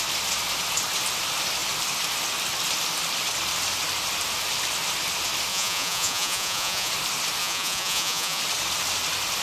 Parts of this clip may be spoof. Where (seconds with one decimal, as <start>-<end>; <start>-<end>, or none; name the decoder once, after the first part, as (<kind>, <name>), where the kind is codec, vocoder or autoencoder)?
5.5-6.9 (vocoder, Vocos); 7.4-8.4